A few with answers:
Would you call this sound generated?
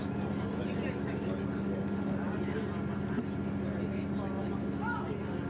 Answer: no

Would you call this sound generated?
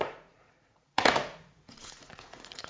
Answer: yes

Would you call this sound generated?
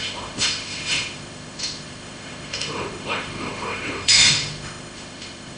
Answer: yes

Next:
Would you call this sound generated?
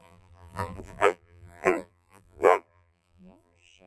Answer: yes